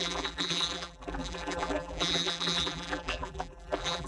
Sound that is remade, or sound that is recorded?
remade